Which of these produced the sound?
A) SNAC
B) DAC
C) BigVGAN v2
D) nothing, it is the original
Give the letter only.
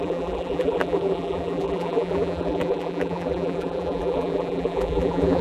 C